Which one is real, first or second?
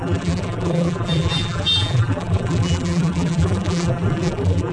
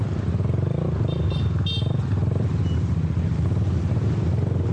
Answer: second